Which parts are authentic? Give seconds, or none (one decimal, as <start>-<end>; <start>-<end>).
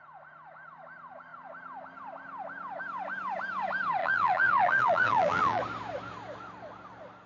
0.0-4.0; 5.6-7.3